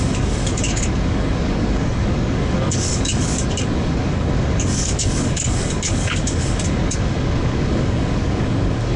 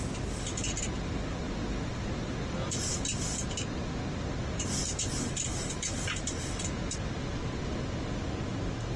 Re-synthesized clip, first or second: first